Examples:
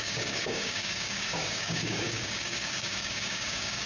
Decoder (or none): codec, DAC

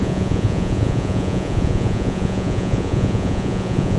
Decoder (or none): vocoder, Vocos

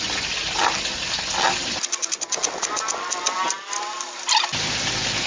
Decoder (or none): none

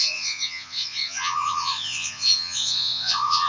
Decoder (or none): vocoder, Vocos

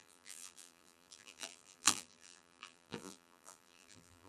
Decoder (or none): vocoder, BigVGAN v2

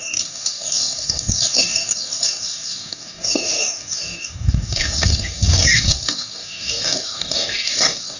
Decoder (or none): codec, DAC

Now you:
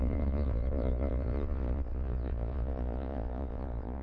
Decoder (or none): vocoder, Vocos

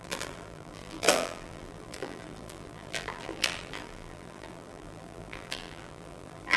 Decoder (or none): vocoder, BigVGAN v2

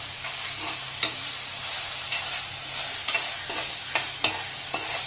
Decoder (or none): none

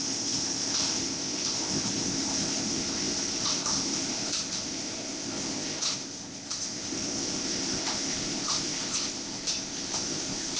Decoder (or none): codec, ZipCodec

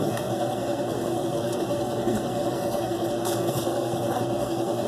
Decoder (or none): codec, SNAC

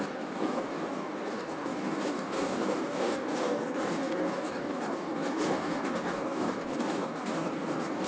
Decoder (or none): codec, DAC